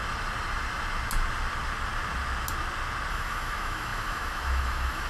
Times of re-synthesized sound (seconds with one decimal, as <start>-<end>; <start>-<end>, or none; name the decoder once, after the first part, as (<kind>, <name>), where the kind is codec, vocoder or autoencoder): 3.1-5.1 (autoencoder, DAC-VAE)